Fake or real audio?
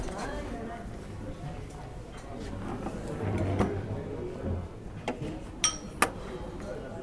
real